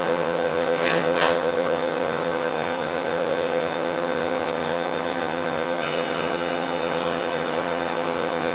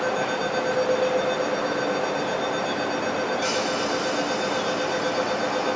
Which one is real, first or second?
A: second